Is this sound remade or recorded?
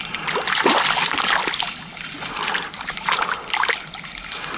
recorded